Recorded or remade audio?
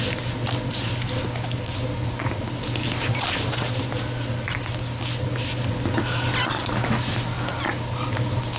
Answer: recorded